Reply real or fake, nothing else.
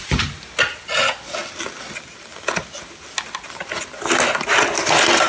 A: real